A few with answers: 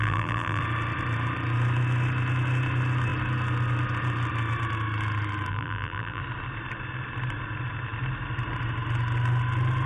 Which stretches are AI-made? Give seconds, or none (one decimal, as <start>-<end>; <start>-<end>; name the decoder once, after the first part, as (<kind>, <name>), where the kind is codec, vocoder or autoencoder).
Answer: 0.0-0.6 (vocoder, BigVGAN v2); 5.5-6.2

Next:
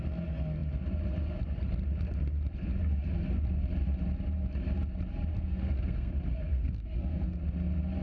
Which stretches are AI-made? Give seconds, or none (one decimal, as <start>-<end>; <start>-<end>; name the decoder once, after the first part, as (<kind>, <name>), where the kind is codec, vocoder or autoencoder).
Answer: 5.3-6.1 (codec, SNAC); 6.5-7.4

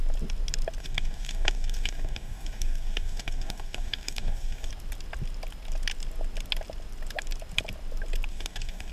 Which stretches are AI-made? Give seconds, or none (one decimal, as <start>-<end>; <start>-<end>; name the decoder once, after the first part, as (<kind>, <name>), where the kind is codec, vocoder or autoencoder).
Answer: 0.8-4.7 (codec, DAC); 8.3-8.9

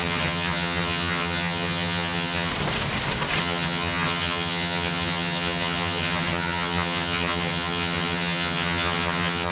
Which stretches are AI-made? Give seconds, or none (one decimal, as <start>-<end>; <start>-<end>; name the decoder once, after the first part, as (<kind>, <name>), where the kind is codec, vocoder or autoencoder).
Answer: 0.0-2.5 (vocoder, HiFi-GAN); 3.4-9.5